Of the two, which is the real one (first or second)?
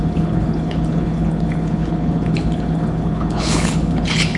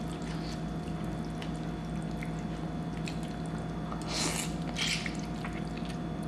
second